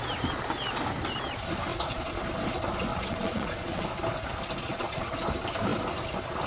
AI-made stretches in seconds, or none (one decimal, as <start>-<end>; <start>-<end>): 1.7-2.2; 2.9-3.8; 4.6-5.1